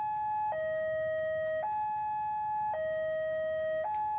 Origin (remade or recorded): recorded